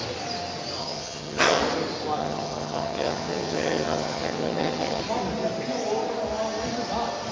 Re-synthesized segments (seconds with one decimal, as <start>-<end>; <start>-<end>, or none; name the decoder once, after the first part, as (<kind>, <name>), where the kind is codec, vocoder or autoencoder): 0.8-1.6 (vocoder, HiFi-GAN); 2.2-5.0